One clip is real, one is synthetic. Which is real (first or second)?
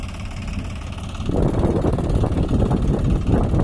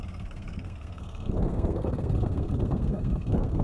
first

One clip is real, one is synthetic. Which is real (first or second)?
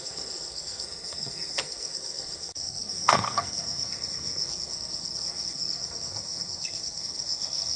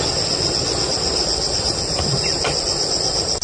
second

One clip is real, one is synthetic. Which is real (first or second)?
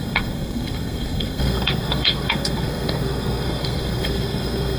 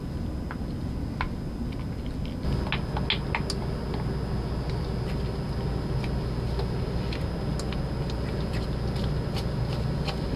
second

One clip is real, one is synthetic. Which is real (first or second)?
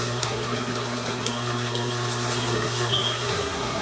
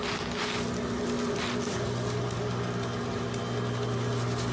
second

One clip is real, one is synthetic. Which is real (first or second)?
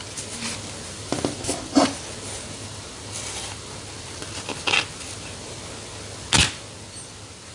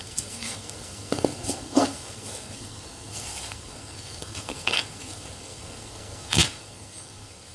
first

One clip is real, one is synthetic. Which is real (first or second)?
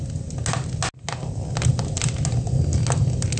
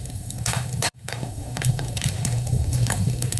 first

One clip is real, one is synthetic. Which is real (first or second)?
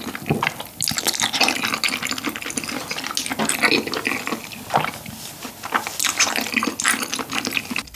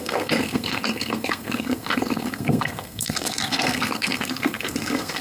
first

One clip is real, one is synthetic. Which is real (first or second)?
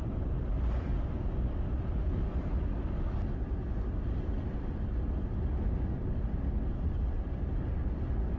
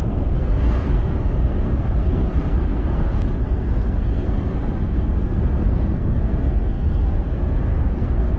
first